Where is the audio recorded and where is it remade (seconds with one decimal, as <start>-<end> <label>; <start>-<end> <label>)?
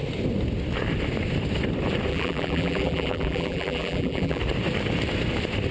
0.0-2.1 recorded; 2.1-4.4 remade; 4.4-5.7 recorded